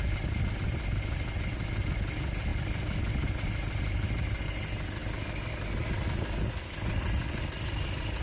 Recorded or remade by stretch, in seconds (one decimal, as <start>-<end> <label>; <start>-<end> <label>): 0.0-8.2 recorded